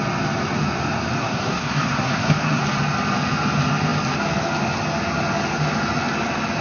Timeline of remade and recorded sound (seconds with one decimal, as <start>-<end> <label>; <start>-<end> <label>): 0.0-1.2 recorded; 1.2-2.6 remade; 2.6-6.6 recorded